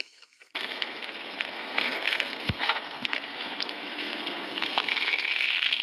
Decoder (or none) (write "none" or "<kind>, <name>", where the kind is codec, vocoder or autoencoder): codec, SNAC